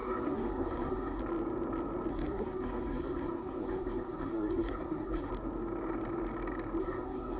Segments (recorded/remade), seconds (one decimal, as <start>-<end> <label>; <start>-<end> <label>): 0.0-1.2 remade; 1.2-2.1 recorded; 2.1-5.3 remade; 5.3-6.8 recorded; 6.8-7.4 remade